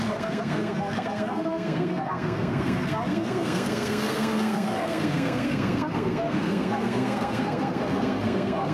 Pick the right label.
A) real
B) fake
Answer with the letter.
B